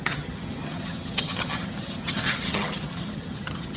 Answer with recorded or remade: remade